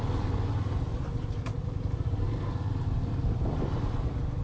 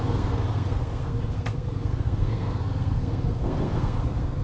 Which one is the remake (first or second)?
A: second